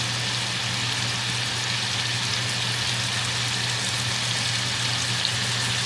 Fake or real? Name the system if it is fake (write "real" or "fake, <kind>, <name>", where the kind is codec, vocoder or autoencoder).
real